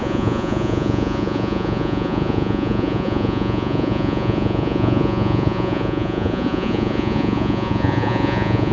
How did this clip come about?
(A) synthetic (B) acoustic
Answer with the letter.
A